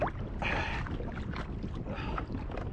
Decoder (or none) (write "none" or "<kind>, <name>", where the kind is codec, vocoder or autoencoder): none